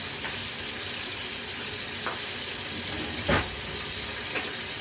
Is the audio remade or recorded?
recorded